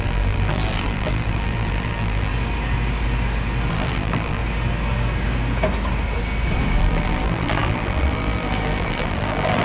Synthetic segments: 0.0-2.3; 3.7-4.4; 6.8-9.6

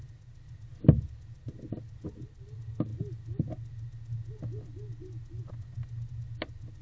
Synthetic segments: none

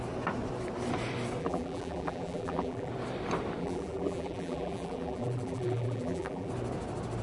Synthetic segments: 1.4-2.9; 3.6-6.5

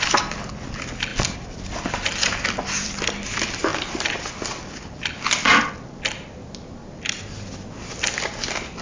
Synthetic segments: 1.1-2.9